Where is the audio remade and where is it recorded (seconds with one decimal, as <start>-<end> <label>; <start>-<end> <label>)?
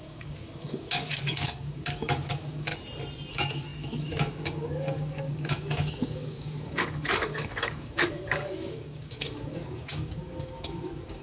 0.0-2.7 remade; 2.7-3.3 recorded; 3.3-11.2 remade